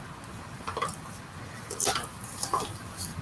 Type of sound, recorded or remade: recorded